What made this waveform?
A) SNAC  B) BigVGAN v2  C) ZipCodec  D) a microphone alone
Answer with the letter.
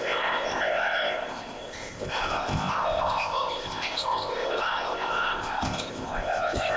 C